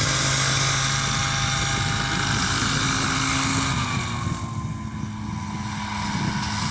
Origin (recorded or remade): recorded